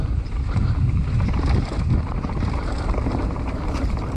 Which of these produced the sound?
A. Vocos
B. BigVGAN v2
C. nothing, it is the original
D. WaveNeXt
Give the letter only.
B